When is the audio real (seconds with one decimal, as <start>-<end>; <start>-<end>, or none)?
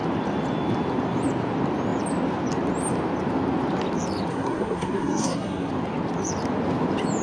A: 0.0-4.3; 5.7-7.2